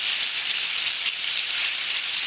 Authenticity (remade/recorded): recorded